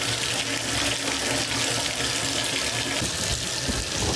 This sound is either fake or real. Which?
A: real